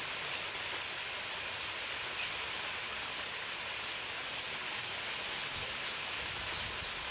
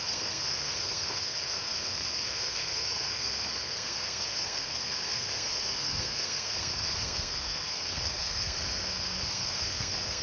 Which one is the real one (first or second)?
first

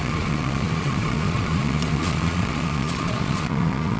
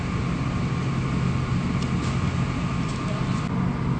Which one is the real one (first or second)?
second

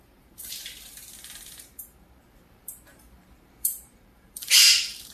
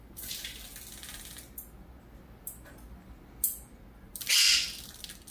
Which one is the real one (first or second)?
second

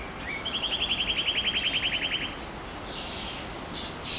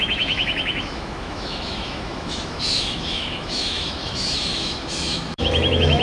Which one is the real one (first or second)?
first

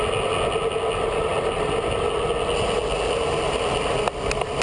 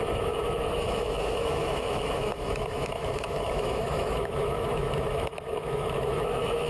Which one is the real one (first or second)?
first